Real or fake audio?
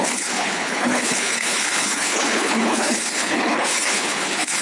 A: fake